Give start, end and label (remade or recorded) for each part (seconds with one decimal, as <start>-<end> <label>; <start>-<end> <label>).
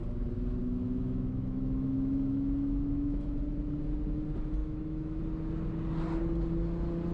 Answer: 0.0-0.6 recorded; 0.6-3.4 remade; 3.4-4.6 recorded; 4.6-5.2 remade; 5.2-7.1 recorded